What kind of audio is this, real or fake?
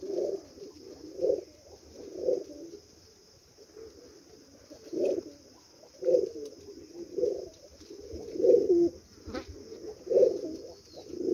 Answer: real